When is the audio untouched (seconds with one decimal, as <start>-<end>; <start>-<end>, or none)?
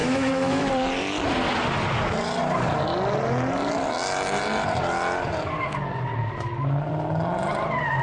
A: 0.7-8.0